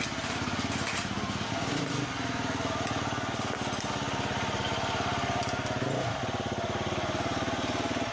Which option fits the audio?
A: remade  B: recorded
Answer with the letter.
B